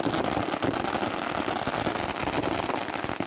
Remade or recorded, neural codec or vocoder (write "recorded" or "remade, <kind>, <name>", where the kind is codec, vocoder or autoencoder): recorded